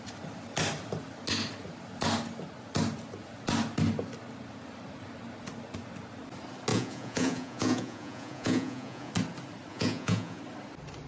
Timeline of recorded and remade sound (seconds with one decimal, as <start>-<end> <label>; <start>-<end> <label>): 0.0-6.7 recorded; 6.7-9.1 remade; 9.1-9.7 recorded; 9.7-10.4 remade; 10.4-11.1 recorded